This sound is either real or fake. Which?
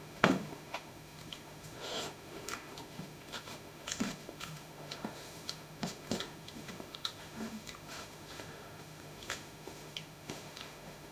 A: fake